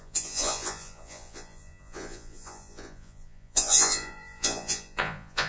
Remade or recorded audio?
remade